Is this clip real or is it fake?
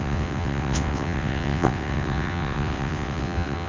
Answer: fake